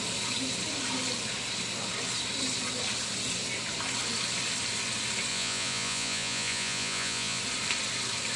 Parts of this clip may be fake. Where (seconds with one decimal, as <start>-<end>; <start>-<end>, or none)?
5.3-7.4